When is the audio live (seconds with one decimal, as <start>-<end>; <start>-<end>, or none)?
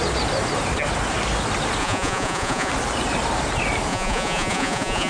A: 0.0-1.8; 2.7-3.9